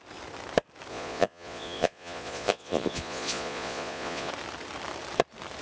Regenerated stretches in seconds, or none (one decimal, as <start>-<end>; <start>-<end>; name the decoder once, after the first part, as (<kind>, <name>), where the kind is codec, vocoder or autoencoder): 0.9-4.3 (vocoder, Vocos)